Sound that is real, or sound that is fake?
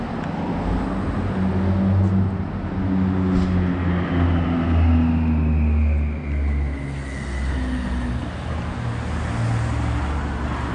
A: real